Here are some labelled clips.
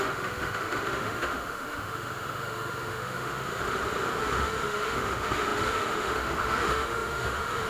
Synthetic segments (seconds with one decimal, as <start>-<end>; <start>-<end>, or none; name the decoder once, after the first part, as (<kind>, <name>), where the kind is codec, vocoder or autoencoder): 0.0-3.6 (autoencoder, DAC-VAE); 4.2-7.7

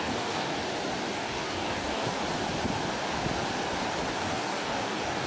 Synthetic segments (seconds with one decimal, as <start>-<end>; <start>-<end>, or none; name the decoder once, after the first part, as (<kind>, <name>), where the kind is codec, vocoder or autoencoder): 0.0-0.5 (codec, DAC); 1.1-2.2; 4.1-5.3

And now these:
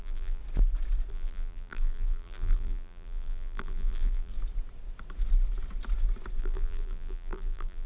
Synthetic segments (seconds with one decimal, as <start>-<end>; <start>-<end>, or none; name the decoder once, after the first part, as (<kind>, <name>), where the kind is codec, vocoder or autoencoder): 0.0-0.4 (vocoder, BigVGAN v2); 1.1-4.3; 6.4-7.9

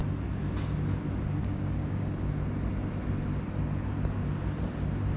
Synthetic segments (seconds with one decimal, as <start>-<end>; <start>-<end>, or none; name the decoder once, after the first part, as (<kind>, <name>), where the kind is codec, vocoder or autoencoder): 1.4-2.3 (codec, DAC)

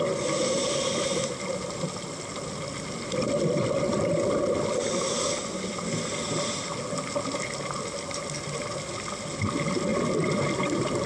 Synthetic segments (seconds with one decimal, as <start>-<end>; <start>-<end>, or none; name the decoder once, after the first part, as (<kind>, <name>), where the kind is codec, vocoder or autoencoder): none

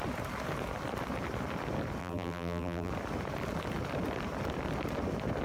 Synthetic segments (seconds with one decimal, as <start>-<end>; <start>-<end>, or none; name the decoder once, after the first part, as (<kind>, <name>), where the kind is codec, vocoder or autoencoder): 2.0-2.9 (vocoder, BigVGAN v2)

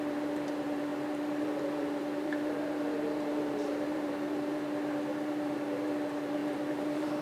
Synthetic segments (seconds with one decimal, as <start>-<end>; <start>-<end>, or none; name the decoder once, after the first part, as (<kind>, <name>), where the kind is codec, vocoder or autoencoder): 0.0-7.2 (vocoder, BigVGAN v2)